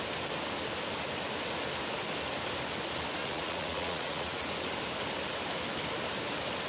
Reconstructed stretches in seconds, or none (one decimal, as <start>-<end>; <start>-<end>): 3.2-4.4